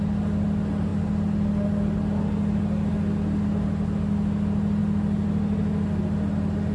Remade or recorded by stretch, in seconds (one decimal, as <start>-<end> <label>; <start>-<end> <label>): 0.0-6.7 recorded